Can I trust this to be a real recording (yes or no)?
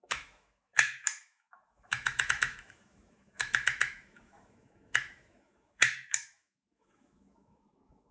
no